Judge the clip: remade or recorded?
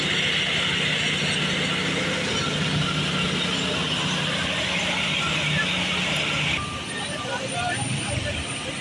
recorded